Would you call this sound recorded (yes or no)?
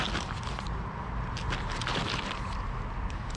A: yes